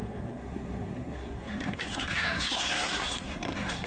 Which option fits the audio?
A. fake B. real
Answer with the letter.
A